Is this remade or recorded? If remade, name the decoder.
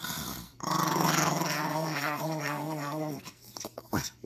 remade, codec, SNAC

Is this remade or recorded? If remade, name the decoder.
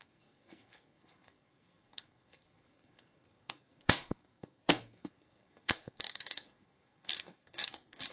remade, codec, SNAC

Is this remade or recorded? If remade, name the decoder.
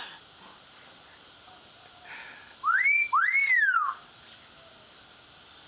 recorded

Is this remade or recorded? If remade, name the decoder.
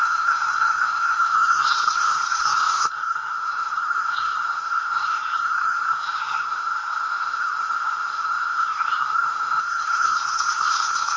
remade, codec, SNAC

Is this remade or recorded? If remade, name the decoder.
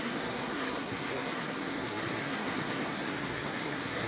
remade, codec, SNAC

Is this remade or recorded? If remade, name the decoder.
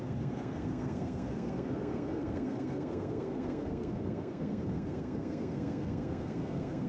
remade, codec, SNAC